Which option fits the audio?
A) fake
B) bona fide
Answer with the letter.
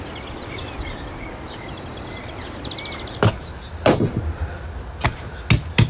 B